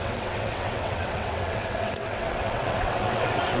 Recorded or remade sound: remade